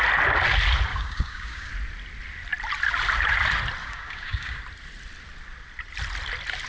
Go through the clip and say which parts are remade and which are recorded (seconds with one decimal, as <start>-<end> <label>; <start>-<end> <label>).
0.0-0.9 recorded; 0.9-1.7 remade; 1.7-3.8 recorded; 3.8-4.6 remade; 4.6-6.7 recorded